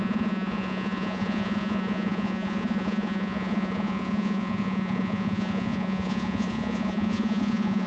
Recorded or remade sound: remade